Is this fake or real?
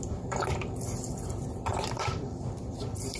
fake